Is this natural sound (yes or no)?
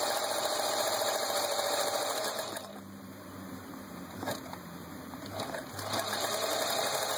no